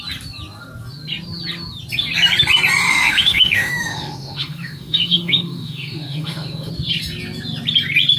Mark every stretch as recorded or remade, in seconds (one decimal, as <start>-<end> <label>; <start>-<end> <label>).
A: 0.0-2.9 recorded; 2.9-6.7 remade; 6.7-8.2 recorded